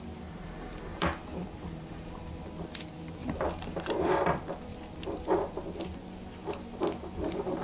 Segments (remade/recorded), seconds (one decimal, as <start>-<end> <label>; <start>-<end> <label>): 0.0-0.9 recorded; 0.9-2.4 remade; 2.4-3.2 recorded; 3.2-4.1 remade; 4.1-7.6 recorded